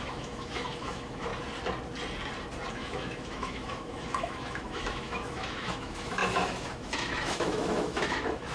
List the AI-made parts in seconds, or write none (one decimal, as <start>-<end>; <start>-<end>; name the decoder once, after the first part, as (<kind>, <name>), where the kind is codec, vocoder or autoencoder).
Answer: 0.0-1.3 (autoencoder, DAC-VAE); 2.7-8.5